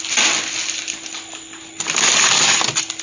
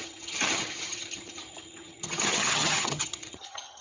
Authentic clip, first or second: first